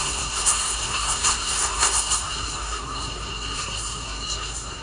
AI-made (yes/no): yes